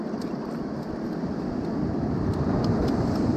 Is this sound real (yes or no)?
no